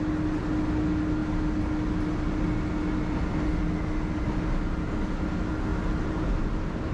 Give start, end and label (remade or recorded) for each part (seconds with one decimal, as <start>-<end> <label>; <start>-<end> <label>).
0.0-6.9 recorded